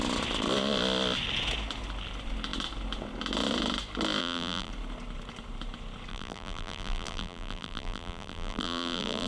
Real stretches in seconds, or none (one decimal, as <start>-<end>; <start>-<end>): 0.0-4.2; 4.7-6.1